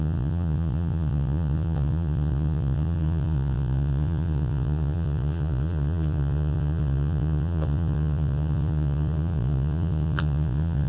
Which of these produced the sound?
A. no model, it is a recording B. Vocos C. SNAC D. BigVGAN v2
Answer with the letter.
B